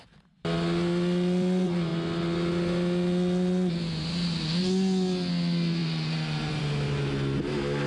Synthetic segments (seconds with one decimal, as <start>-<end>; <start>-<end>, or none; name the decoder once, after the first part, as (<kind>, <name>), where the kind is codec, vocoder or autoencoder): 5.8-6.6 (vocoder, BigVGAN v2)